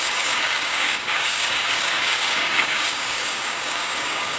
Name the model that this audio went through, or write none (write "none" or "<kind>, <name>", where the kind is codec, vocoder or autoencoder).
codec, DAC